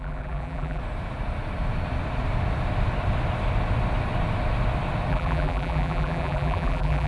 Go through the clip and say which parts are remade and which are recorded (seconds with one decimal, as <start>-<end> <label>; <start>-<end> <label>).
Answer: 0.0-0.8 remade; 0.8-5.1 recorded; 5.1-7.1 remade